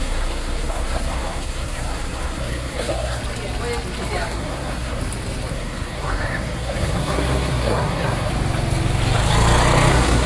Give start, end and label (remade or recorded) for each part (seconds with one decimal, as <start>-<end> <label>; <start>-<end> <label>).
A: 0.0-3.2 remade; 3.2-4.3 recorded; 4.3-5.0 remade; 5.0-5.5 recorded; 5.5-8.3 remade; 8.3-9.9 recorded; 9.9-10.3 remade